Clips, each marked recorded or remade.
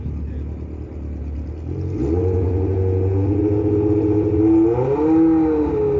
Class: recorded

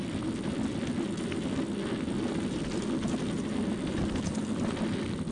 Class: recorded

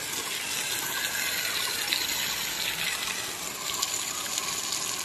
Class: recorded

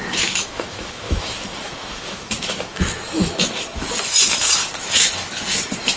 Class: remade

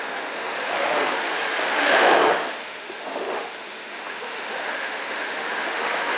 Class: remade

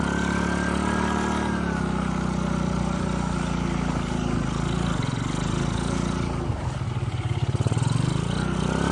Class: recorded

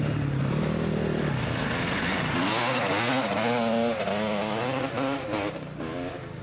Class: recorded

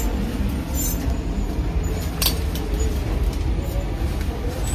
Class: recorded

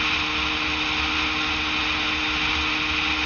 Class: recorded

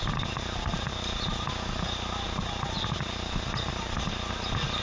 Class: recorded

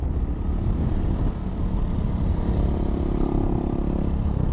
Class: recorded